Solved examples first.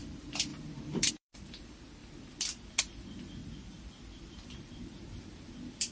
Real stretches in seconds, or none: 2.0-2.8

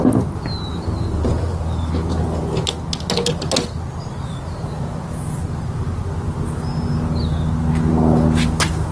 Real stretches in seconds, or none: 0.0-0.7; 1.6-8.9

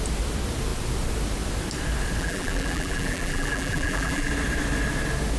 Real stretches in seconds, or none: 0.0-2.2; 4.3-5.4

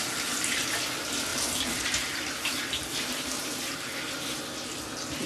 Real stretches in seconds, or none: 0.0-1.3; 4.4-5.3

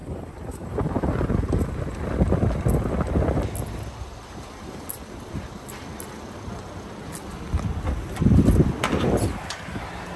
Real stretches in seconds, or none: 1.6-10.2